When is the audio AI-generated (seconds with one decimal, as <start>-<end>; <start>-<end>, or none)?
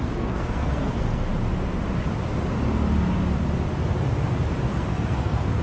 0.0-1.3; 4.7-5.6